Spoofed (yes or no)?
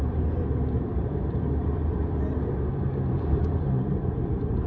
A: yes